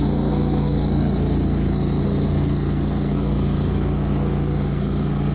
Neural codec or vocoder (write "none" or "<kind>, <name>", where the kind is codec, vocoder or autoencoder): codec, SNAC